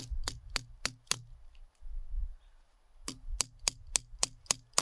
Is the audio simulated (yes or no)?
no